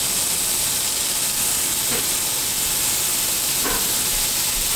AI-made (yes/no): no